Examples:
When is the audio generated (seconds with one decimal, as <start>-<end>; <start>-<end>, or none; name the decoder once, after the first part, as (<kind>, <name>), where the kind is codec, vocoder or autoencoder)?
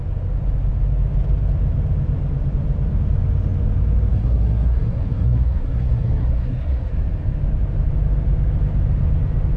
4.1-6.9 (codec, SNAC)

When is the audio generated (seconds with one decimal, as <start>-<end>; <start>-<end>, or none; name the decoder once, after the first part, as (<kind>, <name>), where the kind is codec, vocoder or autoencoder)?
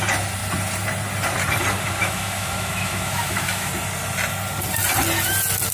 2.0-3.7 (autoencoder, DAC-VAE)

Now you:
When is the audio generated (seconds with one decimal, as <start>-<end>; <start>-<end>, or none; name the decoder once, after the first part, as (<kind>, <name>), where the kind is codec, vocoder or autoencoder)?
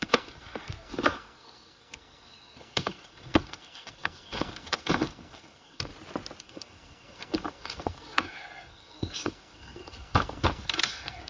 0.0-5.9 (codec, SNAC); 6.4-11.3